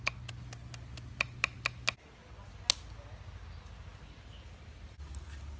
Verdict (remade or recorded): recorded